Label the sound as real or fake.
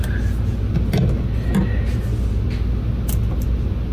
real